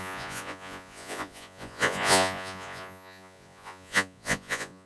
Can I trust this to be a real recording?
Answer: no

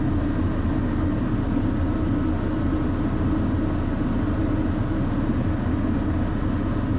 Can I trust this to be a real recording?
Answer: yes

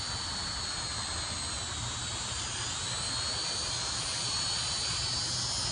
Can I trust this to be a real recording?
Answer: yes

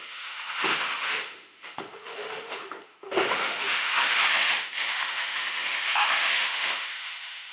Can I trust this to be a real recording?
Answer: no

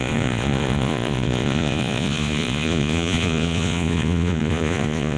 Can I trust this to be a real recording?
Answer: no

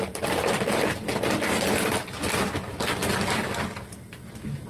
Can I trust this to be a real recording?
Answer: yes